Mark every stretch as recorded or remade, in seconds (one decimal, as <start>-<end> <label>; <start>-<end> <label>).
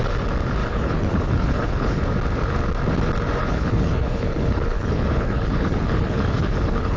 0.0-0.6 recorded; 0.6-2.0 remade; 2.0-3.4 recorded; 3.4-7.0 remade